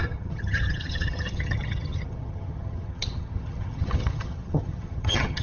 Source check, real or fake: fake